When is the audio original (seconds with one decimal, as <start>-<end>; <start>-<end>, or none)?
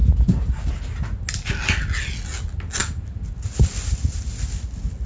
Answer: 0.0-5.1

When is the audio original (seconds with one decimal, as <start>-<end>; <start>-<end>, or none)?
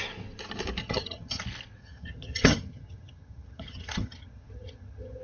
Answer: 0.0-0.8; 1.4-1.8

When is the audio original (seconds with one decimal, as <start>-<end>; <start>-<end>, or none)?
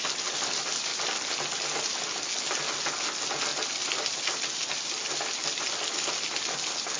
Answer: 0.0-7.0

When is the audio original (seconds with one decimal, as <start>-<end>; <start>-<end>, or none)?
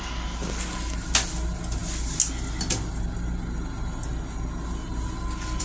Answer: 0.0-5.6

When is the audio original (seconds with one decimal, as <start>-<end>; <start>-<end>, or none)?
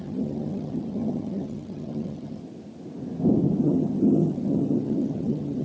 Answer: 2.4-3.6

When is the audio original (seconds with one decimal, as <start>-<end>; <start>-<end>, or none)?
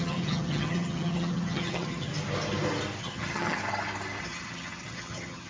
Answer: 2.1-3.0; 3.6-4.2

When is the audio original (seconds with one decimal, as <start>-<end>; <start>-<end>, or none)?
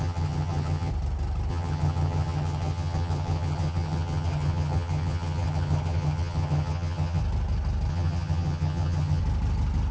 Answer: 0.9-1.5; 7.2-7.9; 9.2-9.9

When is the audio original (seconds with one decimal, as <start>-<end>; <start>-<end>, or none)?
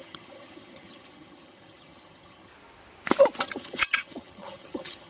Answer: 2.5-3.4